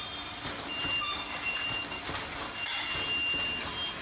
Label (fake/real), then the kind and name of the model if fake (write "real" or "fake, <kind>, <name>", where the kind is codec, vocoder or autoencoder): real